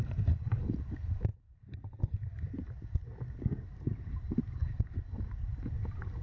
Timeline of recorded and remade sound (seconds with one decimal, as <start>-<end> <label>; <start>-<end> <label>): 0.0-4.6 recorded; 4.6-5.6 remade; 5.6-6.2 recorded